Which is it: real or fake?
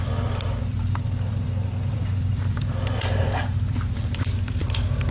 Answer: fake